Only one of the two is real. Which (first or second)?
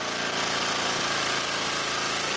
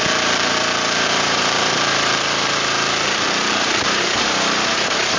first